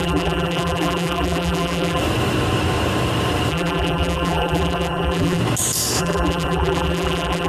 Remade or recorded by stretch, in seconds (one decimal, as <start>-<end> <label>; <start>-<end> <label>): 0.0-2.0 remade; 2.0-3.5 recorded; 3.5-5.4 remade; 5.4-6.0 recorded; 6.0-7.5 remade